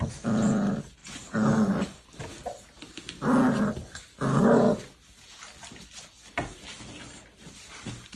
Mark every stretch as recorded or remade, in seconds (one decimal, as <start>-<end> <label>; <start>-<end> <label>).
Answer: 0.0-8.2 recorded